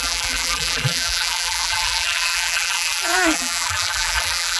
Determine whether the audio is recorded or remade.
remade